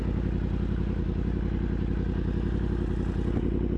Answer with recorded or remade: recorded